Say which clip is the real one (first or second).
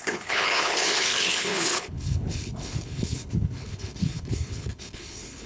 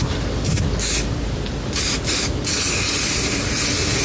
second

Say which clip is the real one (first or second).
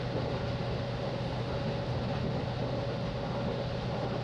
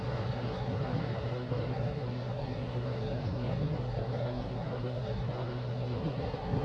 first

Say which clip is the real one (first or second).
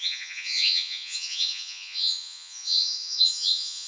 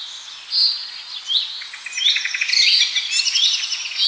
second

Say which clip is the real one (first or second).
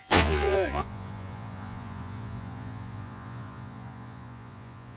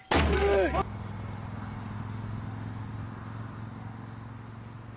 second